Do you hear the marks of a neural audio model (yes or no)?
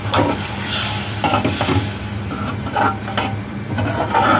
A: no